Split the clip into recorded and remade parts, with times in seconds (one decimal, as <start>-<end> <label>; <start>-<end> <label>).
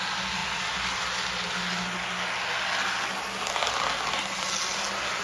0.0-5.2 recorded